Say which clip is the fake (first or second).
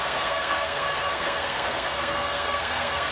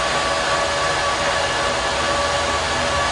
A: first